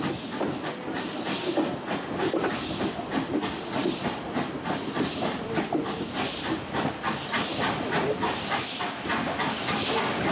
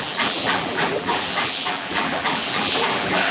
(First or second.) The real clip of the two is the first